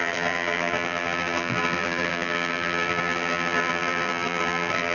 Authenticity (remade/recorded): remade